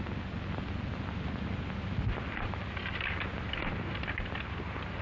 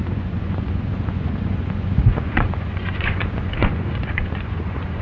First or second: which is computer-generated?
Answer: second